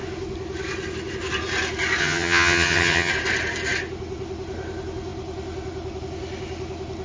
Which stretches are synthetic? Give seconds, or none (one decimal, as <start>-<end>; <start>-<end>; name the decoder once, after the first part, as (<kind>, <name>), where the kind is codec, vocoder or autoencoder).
2.0-3.1 (vocoder, HiFi-GAN)